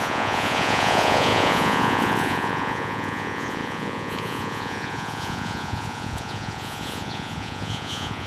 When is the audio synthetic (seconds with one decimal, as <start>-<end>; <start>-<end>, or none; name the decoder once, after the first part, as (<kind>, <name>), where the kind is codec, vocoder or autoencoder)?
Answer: 0.0-8.3 (vocoder, Vocos)